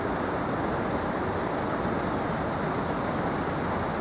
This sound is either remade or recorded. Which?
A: recorded